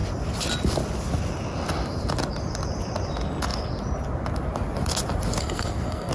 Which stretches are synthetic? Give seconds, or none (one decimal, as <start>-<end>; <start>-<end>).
5.4-6.1